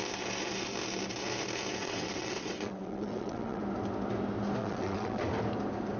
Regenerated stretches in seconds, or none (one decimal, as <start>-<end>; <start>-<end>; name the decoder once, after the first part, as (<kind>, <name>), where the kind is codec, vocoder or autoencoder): 1.8-3.6 (vocoder, WaveNeXt); 4.6-5.3